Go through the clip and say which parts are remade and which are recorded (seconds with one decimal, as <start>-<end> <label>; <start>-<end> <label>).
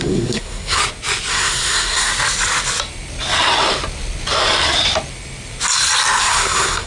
0.0-0.8 remade; 0.8-1.3 recorded; 1.3-2.1 remade; 2.1-6.2 recorded; 6.2-6.9 remade